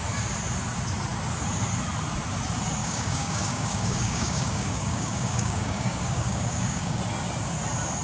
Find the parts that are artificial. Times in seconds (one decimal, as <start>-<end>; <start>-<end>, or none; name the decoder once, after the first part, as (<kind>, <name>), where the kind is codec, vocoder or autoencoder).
2.8-7.0 (codec, DAC)